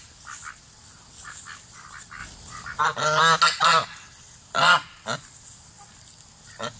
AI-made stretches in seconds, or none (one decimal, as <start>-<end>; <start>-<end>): none